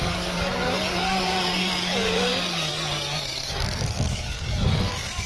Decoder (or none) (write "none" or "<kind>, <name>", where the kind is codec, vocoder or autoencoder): codec, DAC